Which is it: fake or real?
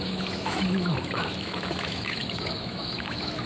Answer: fake